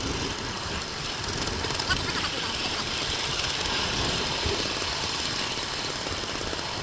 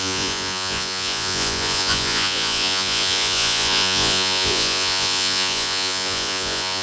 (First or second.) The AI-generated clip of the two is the second